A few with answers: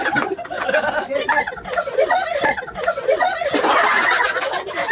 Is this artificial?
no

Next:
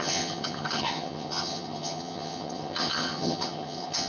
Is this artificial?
yes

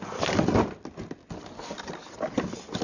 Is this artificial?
no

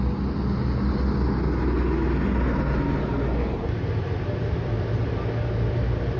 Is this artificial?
no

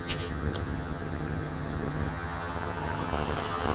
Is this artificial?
yes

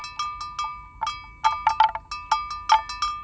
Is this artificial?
no